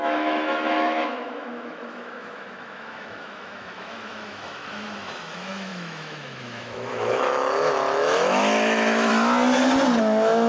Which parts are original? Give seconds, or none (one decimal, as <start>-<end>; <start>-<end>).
9.1-10.0